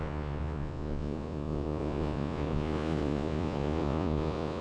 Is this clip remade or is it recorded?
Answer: remade